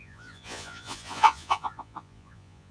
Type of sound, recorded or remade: remade